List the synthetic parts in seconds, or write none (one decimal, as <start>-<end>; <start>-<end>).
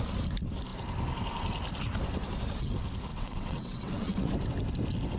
3.1-4.3